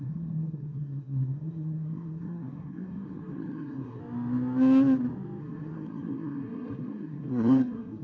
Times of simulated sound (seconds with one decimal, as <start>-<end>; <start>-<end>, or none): 0.0-4.0; 5.4-8.0